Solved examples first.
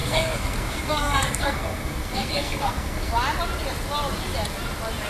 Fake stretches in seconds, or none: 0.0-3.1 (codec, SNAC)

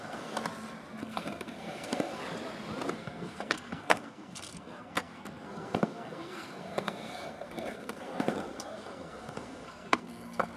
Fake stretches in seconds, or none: 0.0-0.4 (codec, SNAC); 1.0-2.2; 2.9-10.6

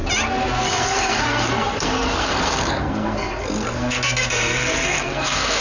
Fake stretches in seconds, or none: 0.6-5.6 (codec, SNAC)

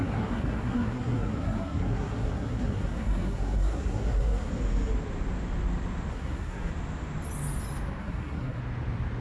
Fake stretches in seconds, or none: 0.0-4.5 (codec, SNAC); 6.1-6.7; 8.0-8.6